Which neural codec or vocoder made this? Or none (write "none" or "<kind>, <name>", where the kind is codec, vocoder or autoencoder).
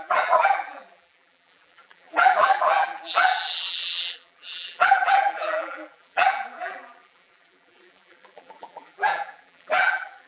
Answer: vocoder, BigVGAN v2